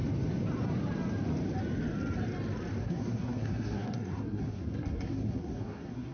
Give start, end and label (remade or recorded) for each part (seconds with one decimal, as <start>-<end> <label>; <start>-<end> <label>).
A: 0.0-2.8 recorded; 2.8-6.1 remade

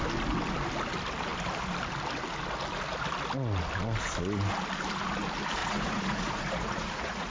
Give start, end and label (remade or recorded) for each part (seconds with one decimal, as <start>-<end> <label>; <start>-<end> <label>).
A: 0.0-5.6 recorded; 5.6-7.3 remade

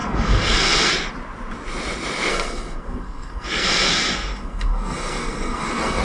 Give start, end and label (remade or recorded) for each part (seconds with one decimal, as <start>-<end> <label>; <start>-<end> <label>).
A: 0.0-0.9 remade; 0.9-2.3 recorded; 2.3-6.0 remade

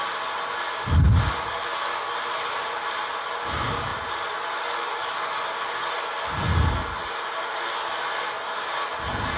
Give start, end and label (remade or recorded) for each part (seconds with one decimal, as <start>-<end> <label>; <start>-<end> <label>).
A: 0.0-9.4 recorded

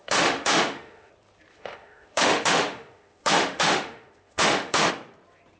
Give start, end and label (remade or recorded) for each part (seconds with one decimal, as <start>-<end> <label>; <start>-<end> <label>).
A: 0.0-1.1 remade; 1.1-1.5 recorded; 1.5-4.9 remade; 4.9-5.6 recorded

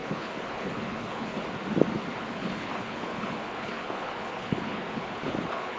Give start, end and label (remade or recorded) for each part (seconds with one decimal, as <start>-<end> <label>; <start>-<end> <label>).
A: 0.0-1.5 remade; 1.5-2.1 recorded; 2.1-5.8 remade

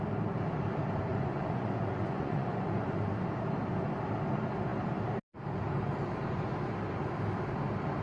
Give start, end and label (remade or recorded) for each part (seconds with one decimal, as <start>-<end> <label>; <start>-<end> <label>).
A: 0.0-1.1 recorded; 1.1-3.1 remade; 3.1-8.0 recorded